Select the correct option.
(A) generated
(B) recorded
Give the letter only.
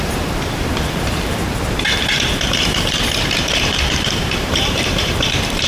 A